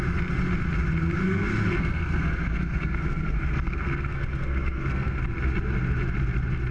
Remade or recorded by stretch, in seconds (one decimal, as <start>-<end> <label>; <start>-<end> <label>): 0.0-1.2 recorded; 1.2-5.2 remade; 5.2-6.7 recorded